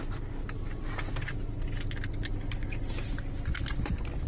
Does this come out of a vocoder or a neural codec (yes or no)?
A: no